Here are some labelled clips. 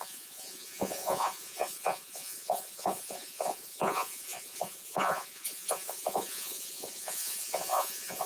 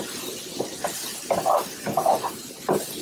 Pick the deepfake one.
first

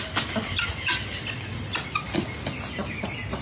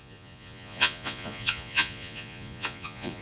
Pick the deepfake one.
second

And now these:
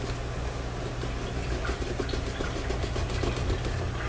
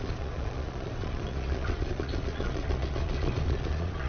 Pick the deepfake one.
second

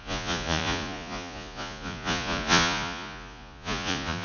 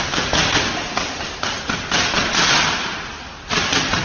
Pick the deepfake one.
first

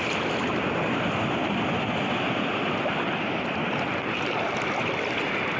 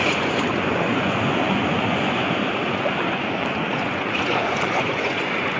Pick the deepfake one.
second